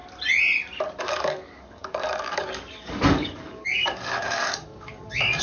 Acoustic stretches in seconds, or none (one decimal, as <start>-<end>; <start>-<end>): 0.0-1.0